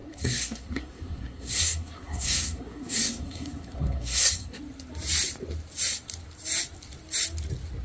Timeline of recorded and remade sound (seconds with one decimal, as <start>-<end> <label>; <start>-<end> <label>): 0.0-4.6 remade; 4.6-7.8 recorded